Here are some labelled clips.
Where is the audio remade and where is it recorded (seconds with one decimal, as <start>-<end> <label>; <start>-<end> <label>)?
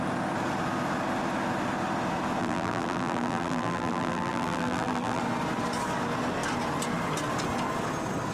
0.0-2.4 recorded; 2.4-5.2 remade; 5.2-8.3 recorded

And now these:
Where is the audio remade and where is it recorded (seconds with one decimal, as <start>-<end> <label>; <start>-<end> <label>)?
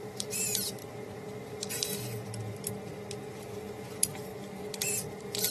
0.0-0.8 remade; 0.8-3.4 recorded; 3.4-4.3 remade; 4.3-5.1 recorded; 5.1-5.5 remade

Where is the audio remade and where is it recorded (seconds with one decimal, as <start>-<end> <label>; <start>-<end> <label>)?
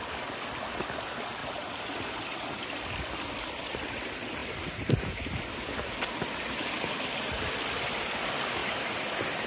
0.0-1.4 recorded; 1.4-3.9 remade; 3.9-4.4 recorded; 4.4-5.9 remade; 5.9-8.6 recorded; 8.6-9.5 remade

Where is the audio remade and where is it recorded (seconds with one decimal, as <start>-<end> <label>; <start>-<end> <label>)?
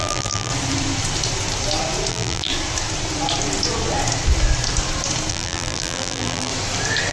0.0-0.5 remade; 0.5-2.1 recorded; 2.1-2.5 remade; 2.5-5.3 recorded; 5.3-6.5 remade; 6.5-7.1 recorded